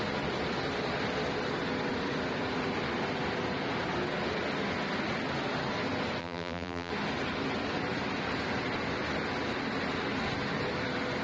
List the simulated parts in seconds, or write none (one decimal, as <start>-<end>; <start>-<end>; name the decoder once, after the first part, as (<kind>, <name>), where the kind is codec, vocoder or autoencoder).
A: 6.2-6.9 (vocoder, BigVGAN v2)